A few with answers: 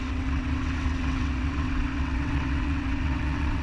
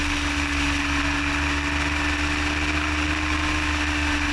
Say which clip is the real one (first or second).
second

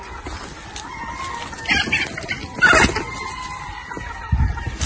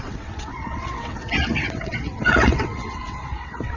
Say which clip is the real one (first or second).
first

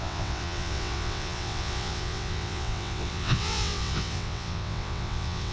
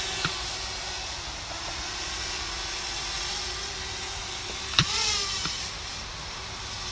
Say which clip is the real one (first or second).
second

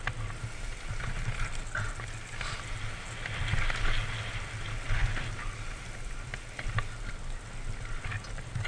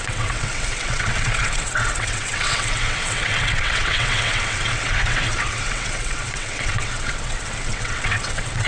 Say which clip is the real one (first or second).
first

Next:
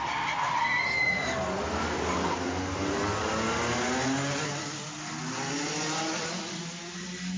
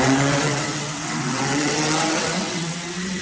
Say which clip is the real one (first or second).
first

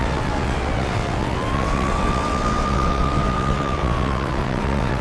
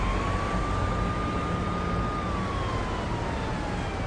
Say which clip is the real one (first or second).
second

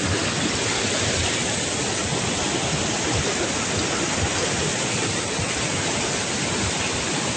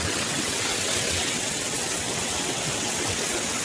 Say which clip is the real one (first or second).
first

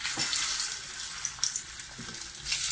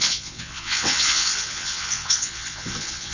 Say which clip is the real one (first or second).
first